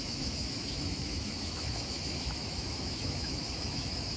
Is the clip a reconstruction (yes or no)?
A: yes